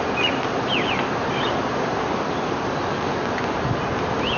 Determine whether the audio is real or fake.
real